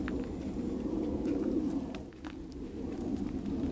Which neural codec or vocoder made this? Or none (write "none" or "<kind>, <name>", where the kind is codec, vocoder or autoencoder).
none